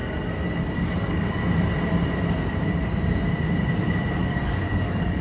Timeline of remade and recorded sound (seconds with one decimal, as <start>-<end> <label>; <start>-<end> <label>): 0.0-0.6 recorded; 0.6-1.4 remade; 1.4-4.2 recorded; 4.2-5.2 remade